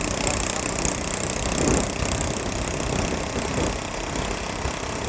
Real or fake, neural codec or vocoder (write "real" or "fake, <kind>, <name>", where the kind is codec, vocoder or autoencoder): real